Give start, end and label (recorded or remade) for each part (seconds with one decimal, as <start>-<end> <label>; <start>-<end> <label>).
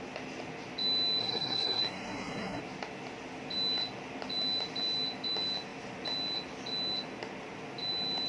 0.0-1.2 recorded; 1.2-2.6 remade; 2.6-8.3 recorded